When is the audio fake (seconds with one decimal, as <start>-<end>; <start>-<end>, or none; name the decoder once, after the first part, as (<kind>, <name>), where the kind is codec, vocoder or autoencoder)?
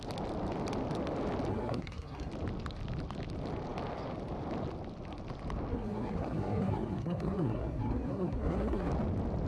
1.5-2.3 (codec, SNAC); 5.7-8.9